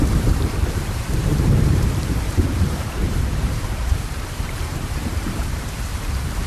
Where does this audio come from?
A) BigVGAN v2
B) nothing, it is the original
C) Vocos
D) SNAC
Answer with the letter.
A